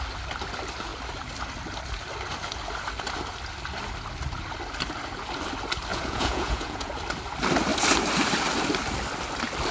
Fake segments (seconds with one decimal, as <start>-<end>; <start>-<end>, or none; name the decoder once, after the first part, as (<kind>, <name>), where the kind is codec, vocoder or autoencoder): 5.9-6.9 (vocoder, Vocos)